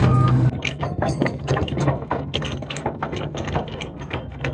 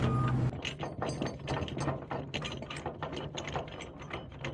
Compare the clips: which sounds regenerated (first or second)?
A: first